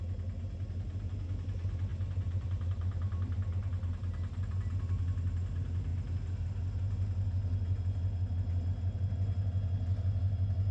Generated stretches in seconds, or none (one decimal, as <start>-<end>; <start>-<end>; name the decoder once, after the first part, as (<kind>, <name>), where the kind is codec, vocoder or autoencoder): 1.9-4.5 (vocoder, BigVGAN v2)